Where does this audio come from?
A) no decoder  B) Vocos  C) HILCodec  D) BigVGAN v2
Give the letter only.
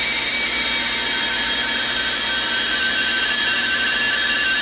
A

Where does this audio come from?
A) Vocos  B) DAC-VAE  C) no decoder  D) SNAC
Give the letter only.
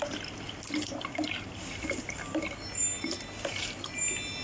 C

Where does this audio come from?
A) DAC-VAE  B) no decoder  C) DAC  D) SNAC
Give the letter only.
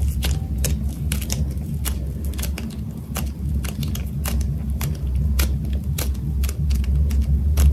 B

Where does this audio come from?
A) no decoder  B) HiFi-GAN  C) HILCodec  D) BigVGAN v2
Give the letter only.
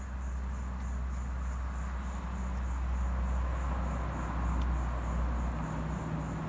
A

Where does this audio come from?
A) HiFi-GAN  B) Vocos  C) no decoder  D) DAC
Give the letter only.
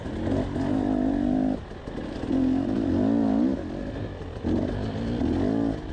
C